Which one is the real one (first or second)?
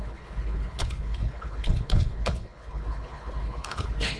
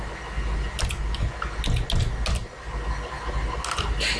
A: second